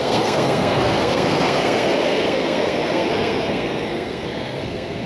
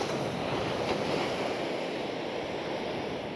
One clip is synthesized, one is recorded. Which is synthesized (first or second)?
first